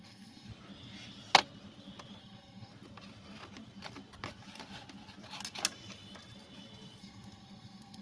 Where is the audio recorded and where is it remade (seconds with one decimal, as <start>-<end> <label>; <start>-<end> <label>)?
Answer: 0.0-0.5 remade; 0.5-2.2 recorded; 2.2-2.7 remade; 2.7-7.0 recorded; 7.0-8.0 remade